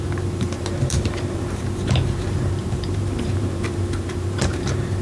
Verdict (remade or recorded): remade